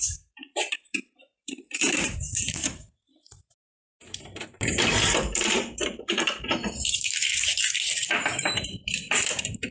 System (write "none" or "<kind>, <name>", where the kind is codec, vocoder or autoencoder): vocoder, BigVGAN v2